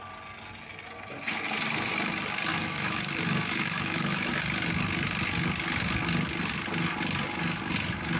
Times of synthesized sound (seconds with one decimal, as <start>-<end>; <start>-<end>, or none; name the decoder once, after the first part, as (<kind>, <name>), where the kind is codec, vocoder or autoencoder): 2.5-4.3 (autoencoder, DAC-VAE)